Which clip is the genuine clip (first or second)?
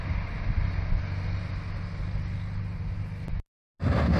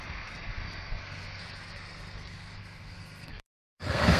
first